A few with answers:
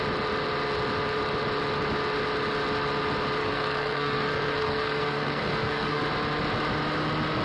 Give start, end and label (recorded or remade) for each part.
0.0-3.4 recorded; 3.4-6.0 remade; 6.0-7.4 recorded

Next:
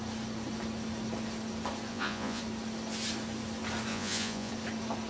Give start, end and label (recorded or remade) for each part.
0.0-1.9 recorded; 1.9-2.4 remade; 2.4-3.9 recorded; 3.9-4.5 remade; 4.5-5.1 recorded

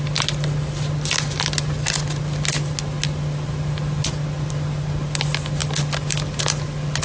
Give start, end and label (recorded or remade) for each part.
0.0-7.0 recorded

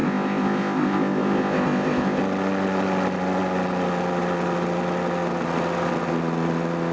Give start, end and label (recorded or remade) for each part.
0.0-2.2 remade; 2.2-6.9 recorded